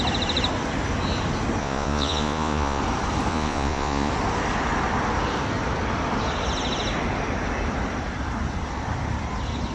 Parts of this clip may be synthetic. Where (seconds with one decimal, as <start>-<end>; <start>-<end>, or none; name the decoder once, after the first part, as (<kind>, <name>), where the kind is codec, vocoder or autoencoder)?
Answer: 1.6-2.8 (vocoder, Vocos); 3.3-4.1